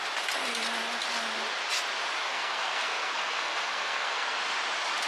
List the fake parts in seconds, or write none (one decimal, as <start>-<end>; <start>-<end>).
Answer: 2.2-4.4